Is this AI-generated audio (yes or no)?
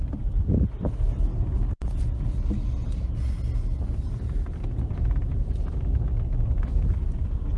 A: no